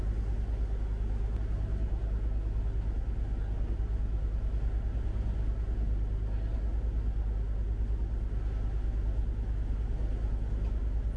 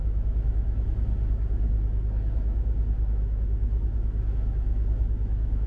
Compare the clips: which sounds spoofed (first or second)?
second